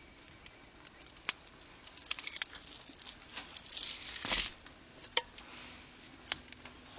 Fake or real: real